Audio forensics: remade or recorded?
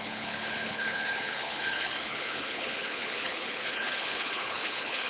remade